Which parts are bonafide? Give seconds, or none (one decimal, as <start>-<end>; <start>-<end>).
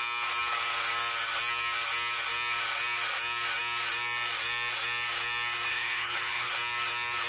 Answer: 0.0-5.7; 6.5-7.3